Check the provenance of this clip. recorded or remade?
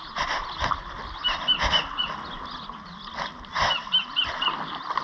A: recorded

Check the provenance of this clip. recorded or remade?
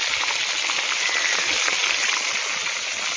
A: recorded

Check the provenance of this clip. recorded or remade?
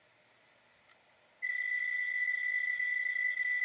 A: recorded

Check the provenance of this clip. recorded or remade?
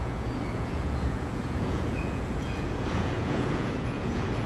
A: remade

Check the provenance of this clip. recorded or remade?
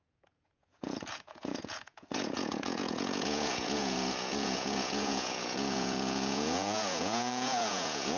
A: remade